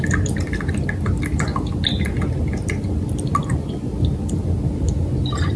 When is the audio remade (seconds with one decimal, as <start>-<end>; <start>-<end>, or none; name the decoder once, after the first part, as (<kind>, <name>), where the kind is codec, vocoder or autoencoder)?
3.4-3.9 (vocoder, BigVGAN v2)